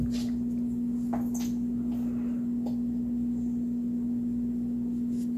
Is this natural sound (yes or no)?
yes